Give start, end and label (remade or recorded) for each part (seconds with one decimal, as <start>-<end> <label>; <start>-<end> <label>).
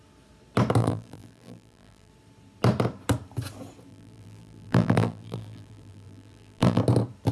0.0-0.8 recorded; 0.8-2.1 remade; 2.1-3.9 recorded; 3.9-6.8 remade; 6.8-7.3 recorded